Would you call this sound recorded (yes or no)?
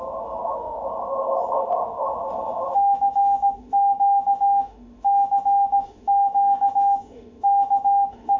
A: no